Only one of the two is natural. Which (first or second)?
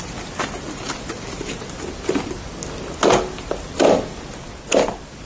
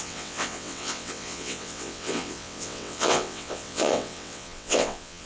first